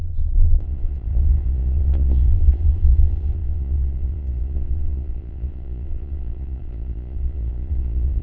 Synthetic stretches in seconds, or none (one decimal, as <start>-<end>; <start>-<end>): 0.0-8.2